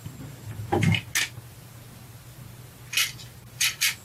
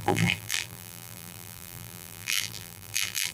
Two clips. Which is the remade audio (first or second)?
second